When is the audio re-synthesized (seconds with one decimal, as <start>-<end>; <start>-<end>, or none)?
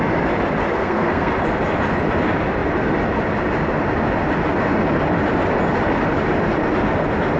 0.7-1.3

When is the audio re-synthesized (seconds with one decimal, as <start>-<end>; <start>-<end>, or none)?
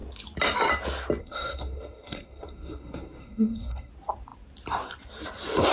1.2-3.9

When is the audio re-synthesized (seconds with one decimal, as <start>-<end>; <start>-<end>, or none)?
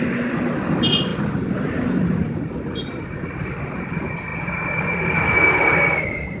none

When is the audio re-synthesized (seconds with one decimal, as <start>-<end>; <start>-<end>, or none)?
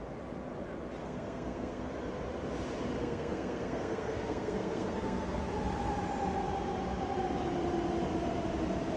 1.0-1.9; 3.0-5.4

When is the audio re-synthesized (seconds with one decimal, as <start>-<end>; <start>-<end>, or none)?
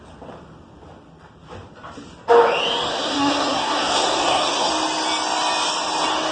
2.9-4.7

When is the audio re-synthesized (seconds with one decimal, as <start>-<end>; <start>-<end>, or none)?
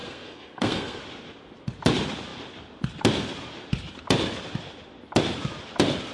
0.0-1.0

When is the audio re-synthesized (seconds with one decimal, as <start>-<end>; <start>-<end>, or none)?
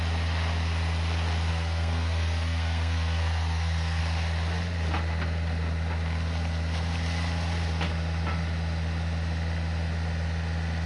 1.5-4.0